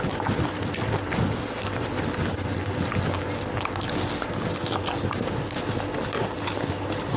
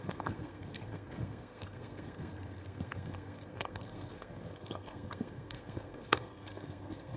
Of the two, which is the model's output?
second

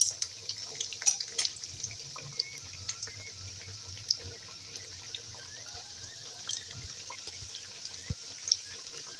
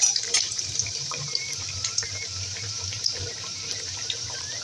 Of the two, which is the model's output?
second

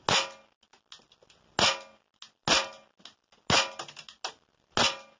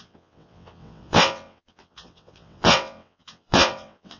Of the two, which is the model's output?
second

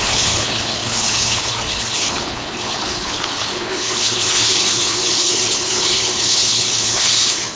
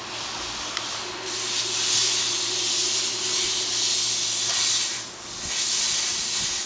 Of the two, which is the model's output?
first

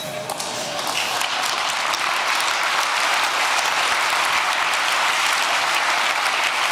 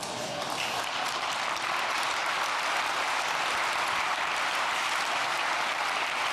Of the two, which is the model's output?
second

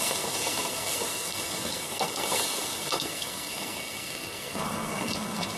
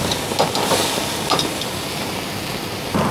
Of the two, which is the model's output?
first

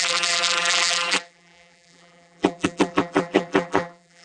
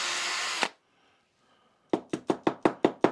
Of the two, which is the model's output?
first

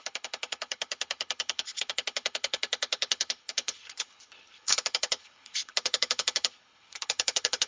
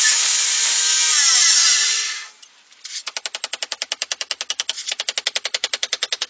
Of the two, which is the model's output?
first